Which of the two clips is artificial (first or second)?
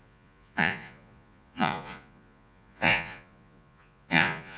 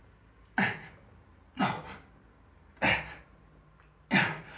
first